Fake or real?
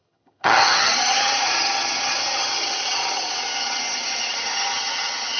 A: fake